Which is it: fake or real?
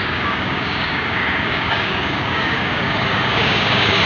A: fake